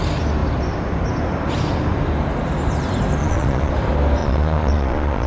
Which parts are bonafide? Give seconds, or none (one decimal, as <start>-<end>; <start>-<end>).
0.0-3.2; 3.7-4.2